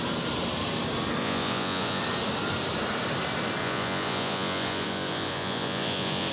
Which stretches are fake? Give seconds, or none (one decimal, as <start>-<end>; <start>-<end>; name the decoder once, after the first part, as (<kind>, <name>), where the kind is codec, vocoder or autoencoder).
1.2-2.0 (vocoder, Vocos); 3.6-6.3